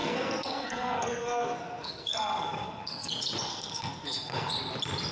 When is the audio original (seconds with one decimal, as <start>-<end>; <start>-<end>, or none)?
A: 3.1-3.5; 4.5-5.1